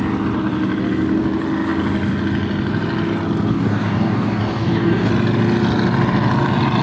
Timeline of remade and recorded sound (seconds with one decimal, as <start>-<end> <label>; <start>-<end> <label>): 0.0-3.5 recorded; 3.5-5.1 remade; 5.1-6.8 recorded